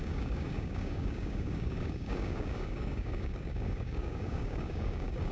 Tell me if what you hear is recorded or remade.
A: remade